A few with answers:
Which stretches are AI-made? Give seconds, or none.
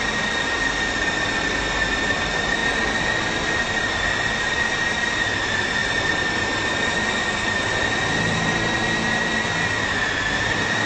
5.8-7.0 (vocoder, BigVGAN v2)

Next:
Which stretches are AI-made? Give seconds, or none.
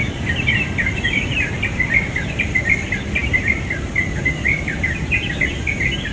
3.2-3.9 (vocoder, BigVGAN v2)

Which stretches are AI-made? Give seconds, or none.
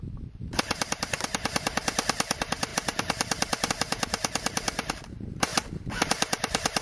0.0-5.5 (vocoder, BigVGAN v2); 6.1-6.8